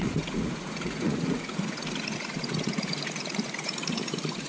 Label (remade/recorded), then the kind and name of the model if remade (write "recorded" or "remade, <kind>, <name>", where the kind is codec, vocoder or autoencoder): remade, vocoder, Vocos